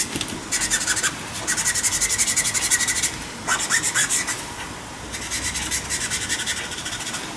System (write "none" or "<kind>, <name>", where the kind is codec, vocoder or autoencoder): none